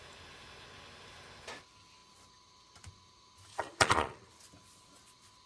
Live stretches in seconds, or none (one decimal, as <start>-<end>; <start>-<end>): 0.0-3.5; 4.3-5.5